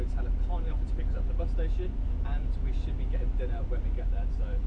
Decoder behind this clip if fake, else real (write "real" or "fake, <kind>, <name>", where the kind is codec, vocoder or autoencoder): real